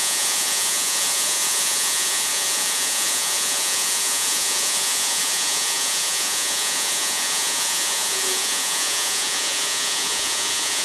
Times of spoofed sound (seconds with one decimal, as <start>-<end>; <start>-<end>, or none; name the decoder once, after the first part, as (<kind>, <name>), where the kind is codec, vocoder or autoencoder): 0.0-10.8 (vocoder, Vocos)